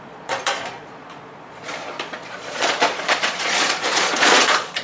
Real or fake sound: fake